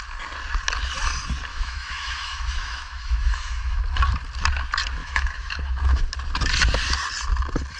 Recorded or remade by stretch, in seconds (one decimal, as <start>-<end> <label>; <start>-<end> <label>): 0.0-1.5 recorded; 1.5-3.8 remade; 3.8-5.0 recorded; 5.0-6.0 remade; 6.0-7.8 recorded